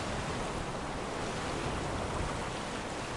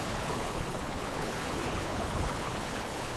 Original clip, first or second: first